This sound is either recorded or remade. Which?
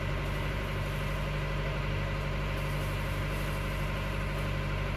recorded